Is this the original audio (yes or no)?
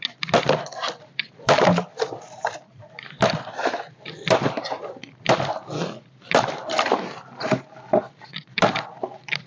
no